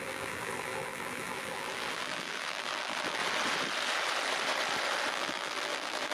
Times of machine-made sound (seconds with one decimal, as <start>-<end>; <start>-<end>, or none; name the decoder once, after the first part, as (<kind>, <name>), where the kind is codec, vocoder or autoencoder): 0.0-3.2 (vocoder, BigVGAN v2); 5.1-6.1